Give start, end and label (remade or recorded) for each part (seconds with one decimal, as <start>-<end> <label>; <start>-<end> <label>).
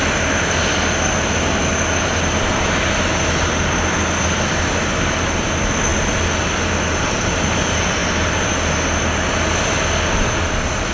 0.0-10.9 recorded